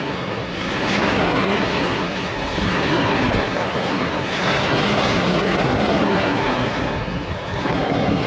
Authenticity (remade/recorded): remade